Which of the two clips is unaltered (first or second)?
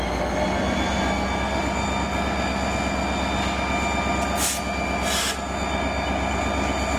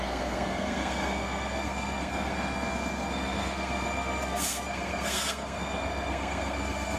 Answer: first